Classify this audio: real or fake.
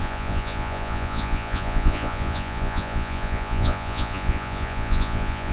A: fake